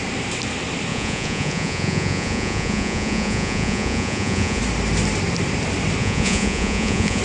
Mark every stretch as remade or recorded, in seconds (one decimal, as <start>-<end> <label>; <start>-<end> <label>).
0.0-0.9 recorded; 0.9-4.6 remade; 4.6-6.0 recorded; 6.0-7.2 remade